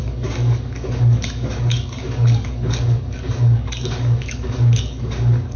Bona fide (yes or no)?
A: no